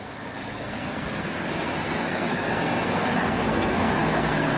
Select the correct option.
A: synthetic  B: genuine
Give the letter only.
A